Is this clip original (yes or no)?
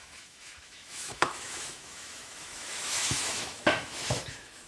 no